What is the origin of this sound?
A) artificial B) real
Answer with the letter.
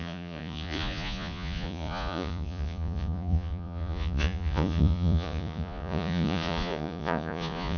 A